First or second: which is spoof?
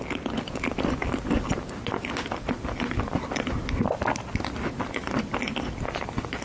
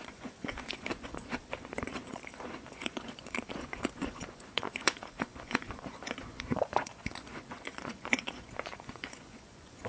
second